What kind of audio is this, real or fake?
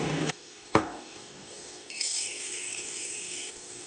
fake